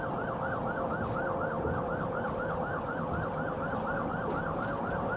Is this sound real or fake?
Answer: real